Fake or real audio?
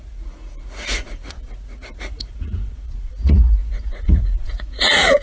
fake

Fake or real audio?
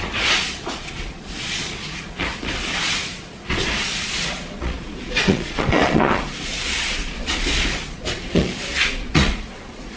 fake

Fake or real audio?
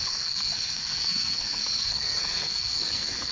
fake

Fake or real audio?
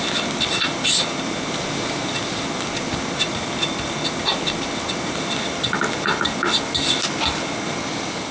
real